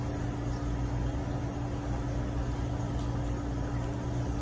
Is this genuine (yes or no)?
yes